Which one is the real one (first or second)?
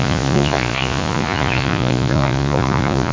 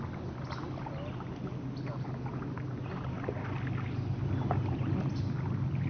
second